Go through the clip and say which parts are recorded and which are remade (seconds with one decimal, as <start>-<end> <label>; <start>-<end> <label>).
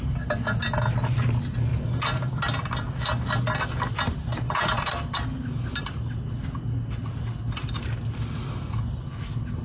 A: 0.0-9.6 recorded